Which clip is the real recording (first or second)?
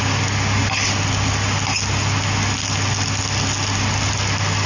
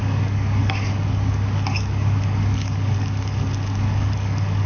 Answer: first